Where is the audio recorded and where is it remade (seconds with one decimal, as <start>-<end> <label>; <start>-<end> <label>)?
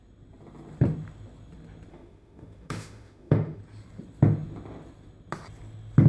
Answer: 0.0-1.9 recorded; 1.9-3.6 remade; 3.6-6.1 recorded